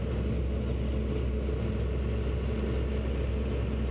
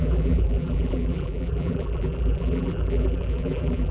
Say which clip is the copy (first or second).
second